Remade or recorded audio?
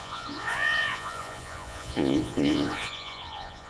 remade